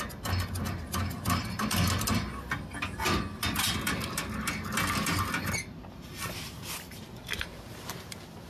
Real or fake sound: real